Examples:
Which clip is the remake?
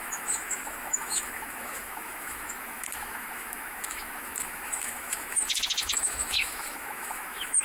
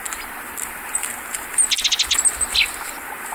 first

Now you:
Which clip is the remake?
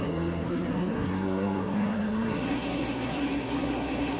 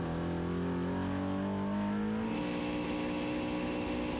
first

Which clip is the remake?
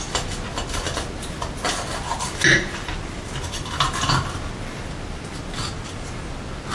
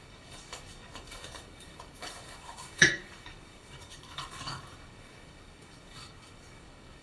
second